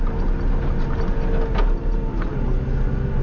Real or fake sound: real